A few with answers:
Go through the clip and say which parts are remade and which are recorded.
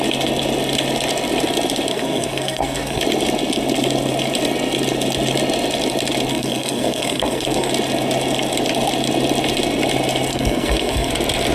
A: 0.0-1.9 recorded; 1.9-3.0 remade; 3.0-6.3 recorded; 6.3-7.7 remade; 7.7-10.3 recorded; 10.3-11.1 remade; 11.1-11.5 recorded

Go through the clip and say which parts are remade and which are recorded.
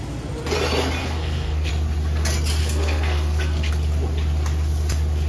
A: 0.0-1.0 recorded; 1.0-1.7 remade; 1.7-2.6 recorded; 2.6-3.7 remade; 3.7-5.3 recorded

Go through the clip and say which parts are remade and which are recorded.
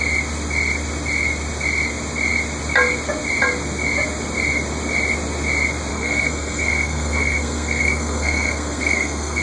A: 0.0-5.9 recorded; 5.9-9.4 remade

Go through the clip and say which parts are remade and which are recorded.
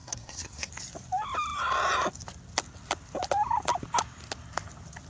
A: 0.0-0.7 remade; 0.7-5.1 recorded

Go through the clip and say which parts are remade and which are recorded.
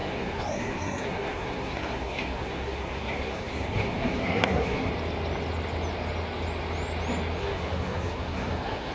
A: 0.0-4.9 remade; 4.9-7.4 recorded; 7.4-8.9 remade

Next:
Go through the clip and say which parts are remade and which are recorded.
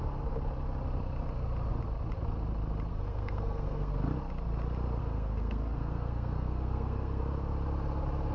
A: 0.0-2.9 recorded; 2.9-3.9 remade; 3.9-5.0 recorded; 5.0-7.2 remade; 7.2-8.3 recorded